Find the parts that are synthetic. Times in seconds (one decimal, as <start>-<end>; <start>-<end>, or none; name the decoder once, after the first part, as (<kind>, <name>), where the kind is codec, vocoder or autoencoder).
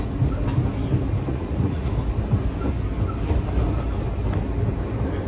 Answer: 1.3-1.9 (vocoder, Vocos)